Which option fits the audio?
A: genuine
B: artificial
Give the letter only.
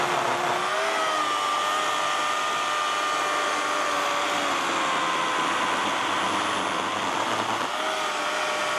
A